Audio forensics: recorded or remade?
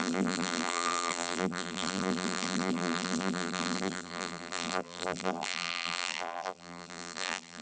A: remade